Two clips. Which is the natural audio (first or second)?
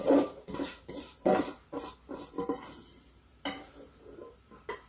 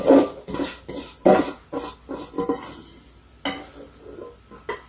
second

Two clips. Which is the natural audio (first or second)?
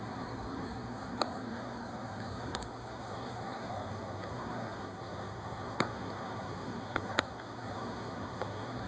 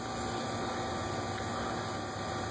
second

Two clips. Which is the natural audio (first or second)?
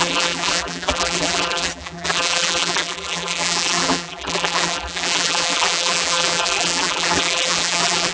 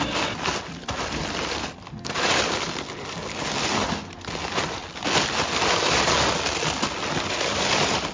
second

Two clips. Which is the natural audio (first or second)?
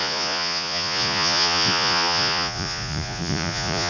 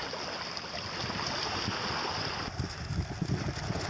second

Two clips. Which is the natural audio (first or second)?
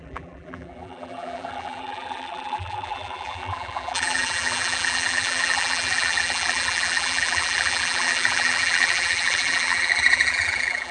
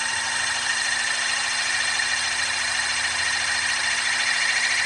second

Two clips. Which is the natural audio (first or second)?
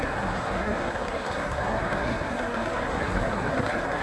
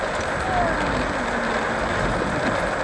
second